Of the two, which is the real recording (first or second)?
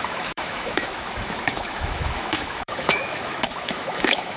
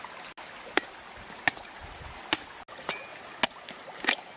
second